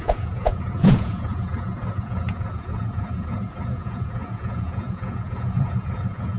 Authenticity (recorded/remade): remade